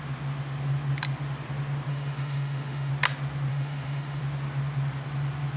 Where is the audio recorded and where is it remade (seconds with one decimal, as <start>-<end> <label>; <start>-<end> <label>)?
0.0-1.9 recorded; 1.9-2.9 remade; 2.9-3.5 recorded; 3.5-4.2 remade; 4.2-5.6 recorded